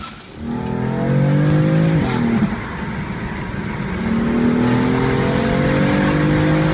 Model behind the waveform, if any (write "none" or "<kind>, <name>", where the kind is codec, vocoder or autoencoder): none